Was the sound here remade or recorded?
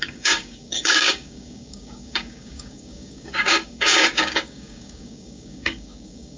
remade